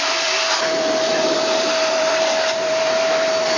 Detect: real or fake fake